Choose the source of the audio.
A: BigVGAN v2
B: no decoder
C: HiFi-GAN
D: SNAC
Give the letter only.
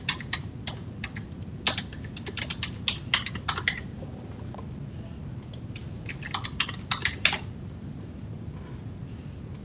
B